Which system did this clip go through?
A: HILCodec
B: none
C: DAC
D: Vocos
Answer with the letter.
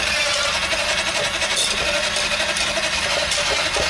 B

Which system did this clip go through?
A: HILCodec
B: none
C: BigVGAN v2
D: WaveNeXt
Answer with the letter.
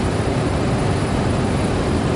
C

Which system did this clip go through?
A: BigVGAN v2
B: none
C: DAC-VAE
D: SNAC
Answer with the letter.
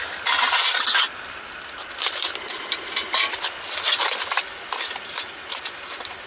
B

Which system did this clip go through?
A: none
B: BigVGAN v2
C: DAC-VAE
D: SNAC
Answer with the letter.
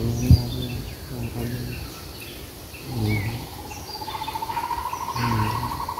A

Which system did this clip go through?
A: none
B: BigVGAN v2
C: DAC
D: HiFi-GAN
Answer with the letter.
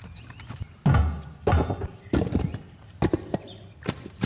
A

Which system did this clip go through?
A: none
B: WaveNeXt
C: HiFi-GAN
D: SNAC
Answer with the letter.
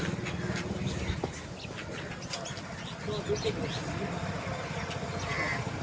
A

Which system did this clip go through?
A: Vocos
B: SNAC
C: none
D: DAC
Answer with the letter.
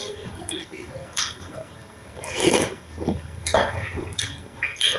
B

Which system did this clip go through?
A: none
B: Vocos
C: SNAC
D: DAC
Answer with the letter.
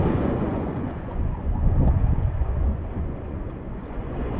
B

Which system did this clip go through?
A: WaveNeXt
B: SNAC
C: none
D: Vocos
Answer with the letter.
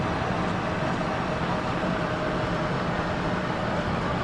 C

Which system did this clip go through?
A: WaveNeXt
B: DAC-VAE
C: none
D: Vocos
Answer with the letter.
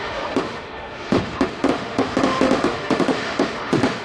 B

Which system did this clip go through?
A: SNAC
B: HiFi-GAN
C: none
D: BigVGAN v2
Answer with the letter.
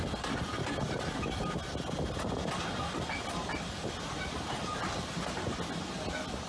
C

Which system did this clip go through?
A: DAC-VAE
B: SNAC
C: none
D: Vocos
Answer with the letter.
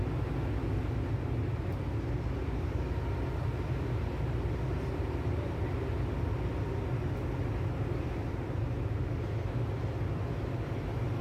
C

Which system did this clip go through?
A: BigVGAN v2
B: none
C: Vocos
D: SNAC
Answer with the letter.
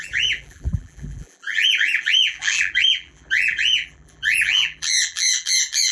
A